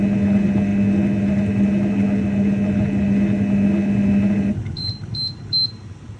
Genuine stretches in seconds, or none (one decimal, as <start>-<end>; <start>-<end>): 0.0-6.2